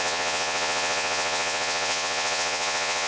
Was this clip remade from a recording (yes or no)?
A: yes